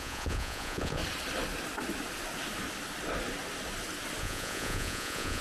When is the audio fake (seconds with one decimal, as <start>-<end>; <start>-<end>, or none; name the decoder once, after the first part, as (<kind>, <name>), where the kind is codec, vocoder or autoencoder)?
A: 0.0-1.0 (vocoder, Vocos); 4.2-5.4